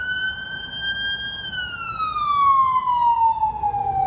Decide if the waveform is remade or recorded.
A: recorded